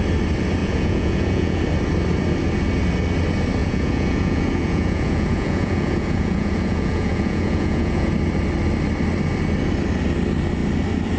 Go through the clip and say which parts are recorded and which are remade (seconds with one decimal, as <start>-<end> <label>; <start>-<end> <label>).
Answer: 0.0-0.6 recorded; 0.6-1.6 remade; 1.6-3.6 recorded; 3.6-8.1 remade; 8.1-11.2 recorded

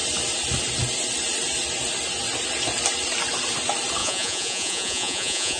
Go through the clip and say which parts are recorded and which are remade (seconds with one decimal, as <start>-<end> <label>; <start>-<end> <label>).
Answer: 0.0-4.0 recorded; 4.0-5.6 remade

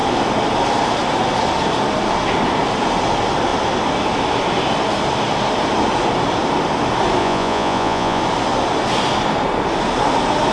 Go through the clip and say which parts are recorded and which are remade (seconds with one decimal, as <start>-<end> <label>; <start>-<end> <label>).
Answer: 0.0-7.2 recorded; 7.2-8.2 remade; 8.2-10.5 recorded

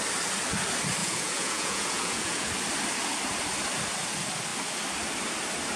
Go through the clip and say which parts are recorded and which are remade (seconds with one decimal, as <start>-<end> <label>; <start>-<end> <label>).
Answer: 0.0-1.0 recorded; 1.0-2.5 remade; 2.5-5.8 recorded

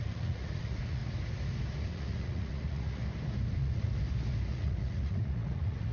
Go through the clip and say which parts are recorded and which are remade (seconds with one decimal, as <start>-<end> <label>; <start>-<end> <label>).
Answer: 0.0-1.0 remade; 1.0-1.9 recorded; 1.9-3.0 remade; 3.0-3.5 recorded; 3.5-3.9 remade; 3.9-4.5 recorded; 4.5-5.9 remade

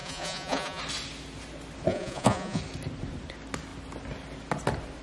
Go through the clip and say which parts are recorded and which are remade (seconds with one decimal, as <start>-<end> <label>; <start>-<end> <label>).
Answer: 0.0-0.8 remade; 0.8-1.9 recorded; 1.9-2.6 remade; 2.6-5.0 recorded